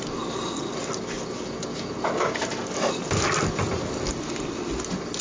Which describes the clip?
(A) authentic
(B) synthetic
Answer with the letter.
A